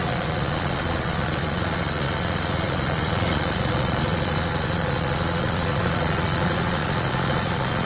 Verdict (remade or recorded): remade